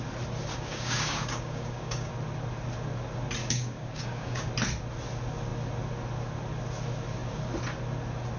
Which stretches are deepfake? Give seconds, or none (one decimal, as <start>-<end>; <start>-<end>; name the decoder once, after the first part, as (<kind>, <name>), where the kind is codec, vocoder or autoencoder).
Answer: 0.5-2.1 (codec, DAC); 3.4-4.5